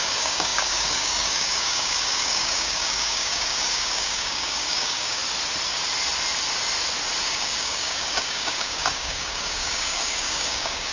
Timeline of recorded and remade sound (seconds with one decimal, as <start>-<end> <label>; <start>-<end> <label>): 0.0-5.2 remade; 5.2-7.2 recorded; 7.2-10.9 remade